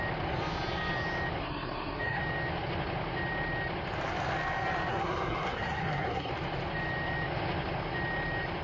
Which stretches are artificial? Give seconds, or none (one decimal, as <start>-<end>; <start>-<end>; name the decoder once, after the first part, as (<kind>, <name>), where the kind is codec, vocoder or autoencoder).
1.4-2.2 (codec, SNAC); 4.9-6.3